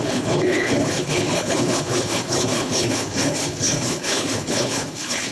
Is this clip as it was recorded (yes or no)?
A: no